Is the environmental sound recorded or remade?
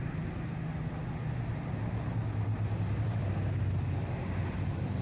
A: recorded